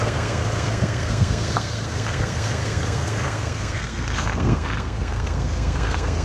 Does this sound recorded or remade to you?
remade